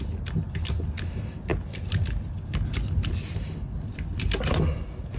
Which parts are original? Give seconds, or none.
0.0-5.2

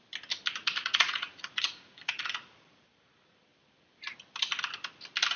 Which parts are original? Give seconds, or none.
0.0-0.6; 2.2-5.4

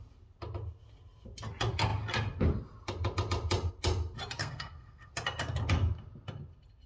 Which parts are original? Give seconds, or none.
0.0-4.4; 5.1-6.9

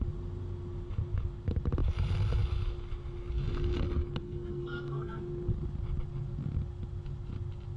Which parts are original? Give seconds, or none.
0.0-4.2; 5.2-7.8

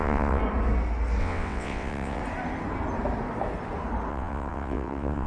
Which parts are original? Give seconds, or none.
0.4-1.2; 2.2-4.1